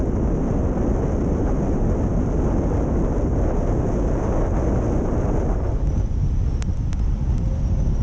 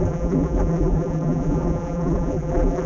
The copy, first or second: second